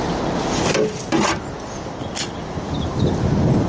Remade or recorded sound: recorded